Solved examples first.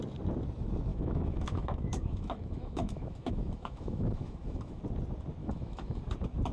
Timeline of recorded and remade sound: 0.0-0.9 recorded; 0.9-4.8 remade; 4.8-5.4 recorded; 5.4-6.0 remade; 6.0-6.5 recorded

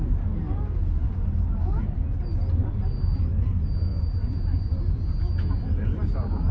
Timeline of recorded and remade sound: 0.0-3.9 recorded; 3.9-5.0 remade; 5.0-6.5 recorded

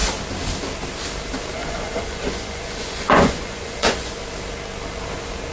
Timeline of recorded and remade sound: 0.0-1.6 recorded; 1.6-4.1 remade; 4.1-5.5 recorded

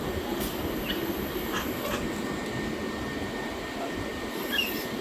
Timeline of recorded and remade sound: 0.0-5.0 recorded

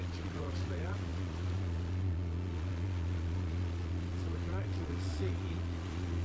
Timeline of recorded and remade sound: 0.0-6.2 remade

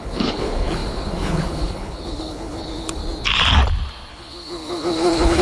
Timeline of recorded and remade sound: 0.0-3.0 remade; 3.0-4.1 recorded; 4.1-5.4 remade